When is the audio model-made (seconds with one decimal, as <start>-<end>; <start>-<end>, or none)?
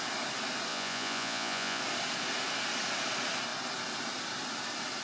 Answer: 0.7-1.8